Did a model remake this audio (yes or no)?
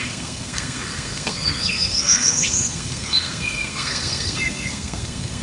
yes